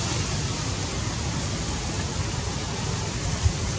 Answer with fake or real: real